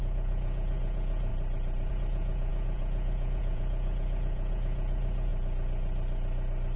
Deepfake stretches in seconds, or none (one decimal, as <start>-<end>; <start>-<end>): 0.0-1.3; 1.9-5.3